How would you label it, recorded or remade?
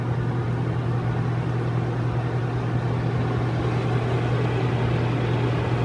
recorded